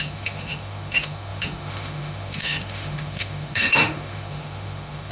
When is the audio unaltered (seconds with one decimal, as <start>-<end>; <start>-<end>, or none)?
none